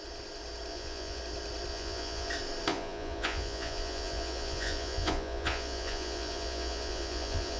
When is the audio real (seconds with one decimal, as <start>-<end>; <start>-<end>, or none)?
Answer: 0.0-0.7; 1.2-1.7; 2.3-2.7